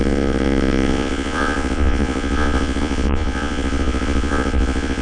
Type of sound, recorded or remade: remade